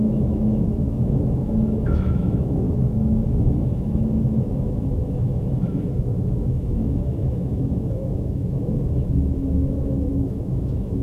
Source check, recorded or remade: remade